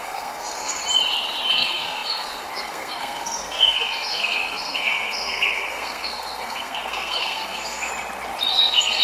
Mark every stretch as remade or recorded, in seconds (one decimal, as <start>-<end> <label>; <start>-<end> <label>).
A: 0.0-0.8 remade; 0.8-1.5 recorded; 1.5-7.9 remade; 7.9-8.5 recorded; 8.5-9.0 remade

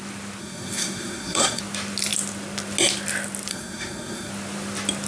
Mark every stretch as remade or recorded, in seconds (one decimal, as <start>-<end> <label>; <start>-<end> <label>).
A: 0.0-0.4 recorded; 0.4-1.6 remade; 1.6-3.5 recorded; 3.5-4.3 remade; 4.3-5.1 recorded

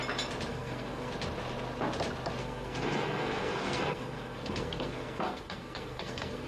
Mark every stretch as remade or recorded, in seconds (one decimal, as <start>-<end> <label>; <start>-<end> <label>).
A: 0.0-0.5 recorded; 0.5-1.1 remade; 1.1-2.4 recorded; 2.4-6.5 remade

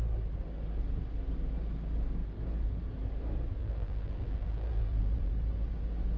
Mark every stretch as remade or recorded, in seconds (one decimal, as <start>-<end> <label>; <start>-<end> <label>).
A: 0.0-3.6 recorded; 3.6-5.3 remade; 5.3-6.2 recorded

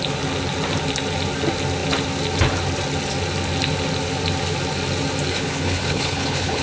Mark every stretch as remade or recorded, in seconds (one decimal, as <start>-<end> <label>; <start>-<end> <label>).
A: 0.0-5.3 recorded; 5.3-6.6 remade

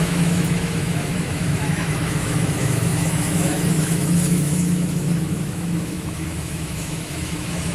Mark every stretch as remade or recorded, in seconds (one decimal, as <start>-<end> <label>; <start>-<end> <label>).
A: 0.0-7.7 remade

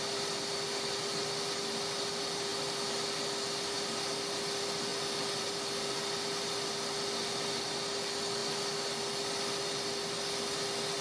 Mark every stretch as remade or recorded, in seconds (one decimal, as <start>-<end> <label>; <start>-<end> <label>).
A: 0.0-11.0 recorded